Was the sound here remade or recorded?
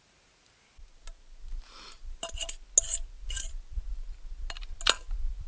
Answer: recorded